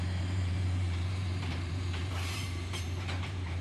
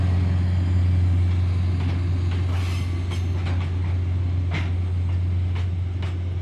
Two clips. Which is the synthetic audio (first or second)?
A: first